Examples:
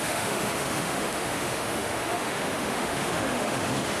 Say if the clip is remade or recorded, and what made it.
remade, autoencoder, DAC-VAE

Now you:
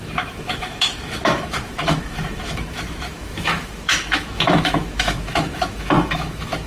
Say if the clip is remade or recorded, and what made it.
remade, autoencoder, DAC-VAE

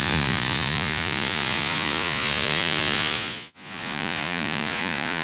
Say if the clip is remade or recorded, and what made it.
remade, vocoder, Vocos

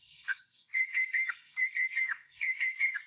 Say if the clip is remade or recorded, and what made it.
remade, codec, SNAC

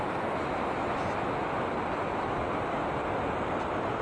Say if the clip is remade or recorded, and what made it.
recorded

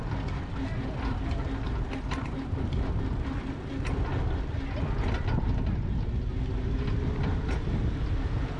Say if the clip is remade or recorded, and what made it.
recorded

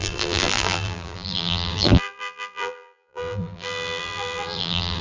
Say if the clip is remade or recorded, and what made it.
remade, vocoder, BigVGAN v2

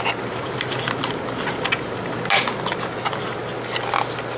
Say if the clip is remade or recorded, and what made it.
recorded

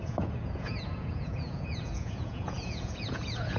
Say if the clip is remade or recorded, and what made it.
remade, vocoder, Vocos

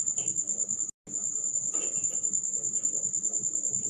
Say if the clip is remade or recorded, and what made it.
recorded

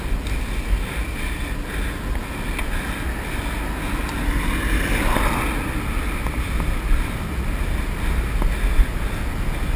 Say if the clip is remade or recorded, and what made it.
recorded